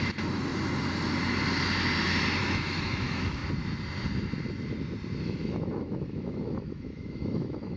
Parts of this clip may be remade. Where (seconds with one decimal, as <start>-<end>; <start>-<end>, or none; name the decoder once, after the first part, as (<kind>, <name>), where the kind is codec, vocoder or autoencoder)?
0.0-0.5 (autoencoder, DAC-VAE); 2.4-3.4; 5.2-7.8